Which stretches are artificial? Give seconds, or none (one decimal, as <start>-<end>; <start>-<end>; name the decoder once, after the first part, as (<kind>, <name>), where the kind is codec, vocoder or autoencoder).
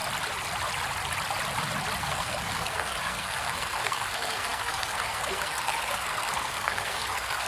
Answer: 2.0-7.5 (codec, SNAC)